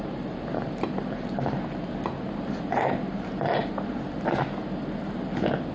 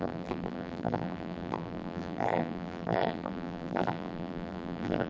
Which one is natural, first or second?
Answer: first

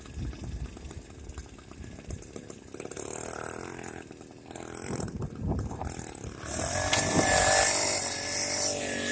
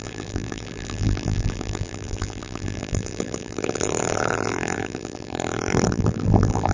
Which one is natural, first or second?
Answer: first